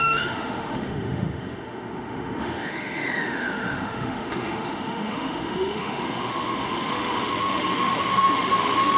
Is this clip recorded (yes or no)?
no